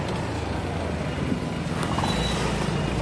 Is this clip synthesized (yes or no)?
no